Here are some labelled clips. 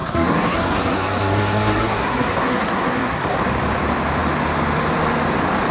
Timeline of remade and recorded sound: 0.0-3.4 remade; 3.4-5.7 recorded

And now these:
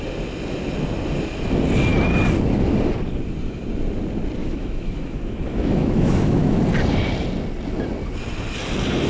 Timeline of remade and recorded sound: 0.0-4.4 recorded; 4.4-6.6 remade; 6.6-9.1 recorded

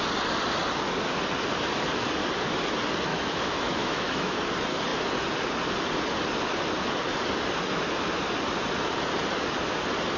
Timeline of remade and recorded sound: 0.0-3.1 recorded; 3.1-4.3 remade; 4.3-10.2 recorded

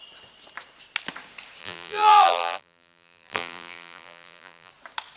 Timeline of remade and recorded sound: 0.0-1.6 recorded; 1.6-4.7 remade; 4.7-5.2 recorded

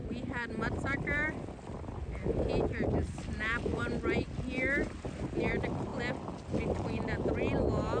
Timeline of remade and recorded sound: 0.0-8.0 recorded

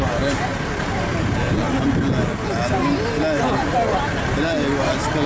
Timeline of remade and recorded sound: 0.0-5.3 recorded